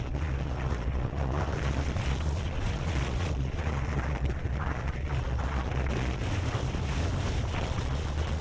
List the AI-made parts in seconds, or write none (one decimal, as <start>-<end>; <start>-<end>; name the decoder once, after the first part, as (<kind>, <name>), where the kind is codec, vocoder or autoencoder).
0.0-6.2 (vocoder, Vocos); 7.5-8.4